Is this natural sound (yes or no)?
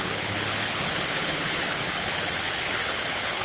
no